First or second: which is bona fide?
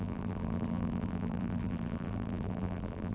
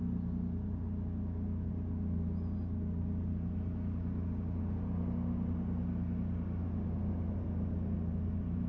second